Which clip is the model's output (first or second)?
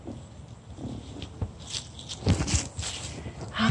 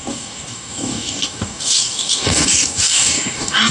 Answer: second